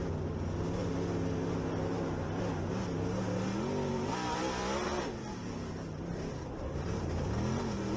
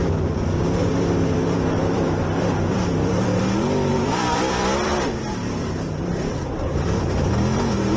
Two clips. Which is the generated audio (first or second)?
second